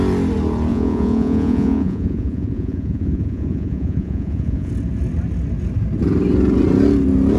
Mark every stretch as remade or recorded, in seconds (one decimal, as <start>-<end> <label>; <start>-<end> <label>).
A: 0.0-0.7 recorded; 0.7-4.7 remade; 4.7-7.4 recorded